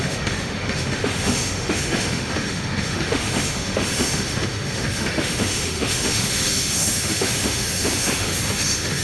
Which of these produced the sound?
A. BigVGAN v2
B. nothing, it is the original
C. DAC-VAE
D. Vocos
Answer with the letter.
C